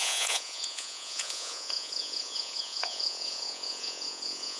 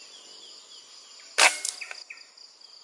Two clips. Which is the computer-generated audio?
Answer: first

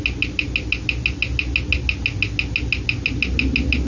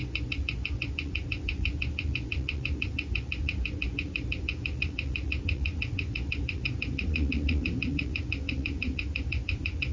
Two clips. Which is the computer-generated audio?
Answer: second